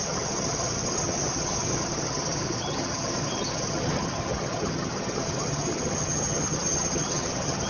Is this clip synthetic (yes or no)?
yes